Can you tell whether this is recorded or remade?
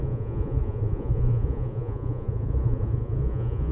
remade